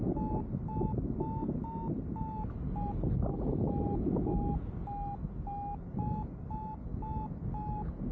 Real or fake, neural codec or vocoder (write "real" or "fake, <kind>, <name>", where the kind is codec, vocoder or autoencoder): real